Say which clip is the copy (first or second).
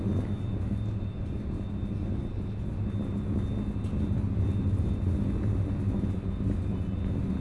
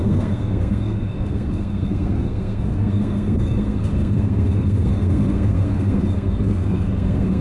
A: second